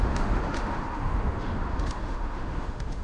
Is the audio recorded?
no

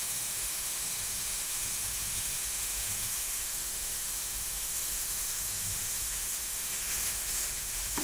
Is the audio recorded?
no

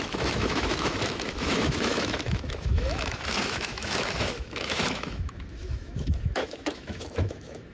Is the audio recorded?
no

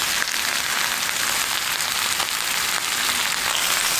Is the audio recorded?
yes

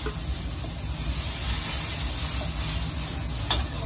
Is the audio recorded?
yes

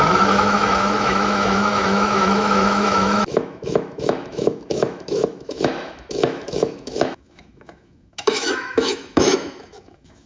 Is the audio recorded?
no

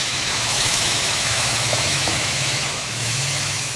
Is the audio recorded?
no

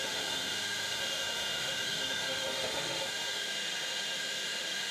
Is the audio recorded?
no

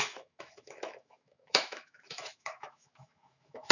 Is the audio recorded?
no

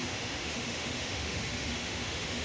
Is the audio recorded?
no